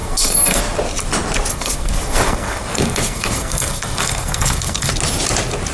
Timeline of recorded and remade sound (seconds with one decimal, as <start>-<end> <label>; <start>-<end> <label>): 0.0-0.6 remade; 0.6-1.5 recorded; 1.5-4.9 remade; 4.9-5.7 recorded